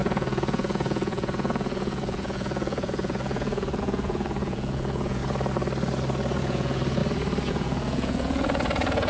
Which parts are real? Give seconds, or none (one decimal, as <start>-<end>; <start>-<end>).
5.2-6.4; 7.0-7.5